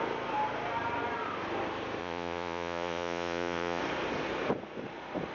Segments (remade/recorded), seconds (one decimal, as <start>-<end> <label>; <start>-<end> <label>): 0.0-2.0 recorded; 2.0-3.8 remade; 3.8-5.3 recorded